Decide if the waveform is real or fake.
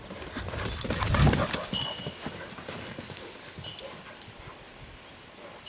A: real